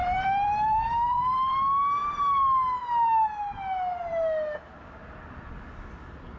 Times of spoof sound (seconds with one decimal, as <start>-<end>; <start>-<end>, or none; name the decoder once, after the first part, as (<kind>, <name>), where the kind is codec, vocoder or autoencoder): 0.0-1.6 (vocoder, BigVGAN v2); 5.0-5.8